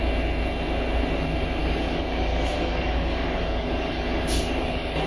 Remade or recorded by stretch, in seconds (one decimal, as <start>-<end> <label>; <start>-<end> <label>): 0.0-1.6 recorded; 1.6-5.1 remade